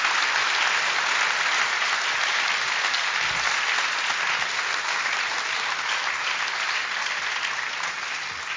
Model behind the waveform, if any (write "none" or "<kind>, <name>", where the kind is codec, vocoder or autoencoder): none